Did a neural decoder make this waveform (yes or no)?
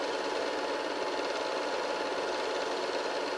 no